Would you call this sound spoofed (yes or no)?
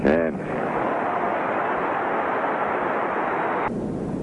no